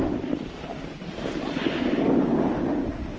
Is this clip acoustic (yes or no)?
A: yes